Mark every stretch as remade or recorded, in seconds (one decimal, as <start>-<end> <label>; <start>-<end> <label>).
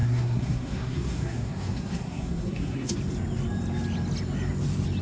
0.0-3.0 remade; 3.0-5.0 recorded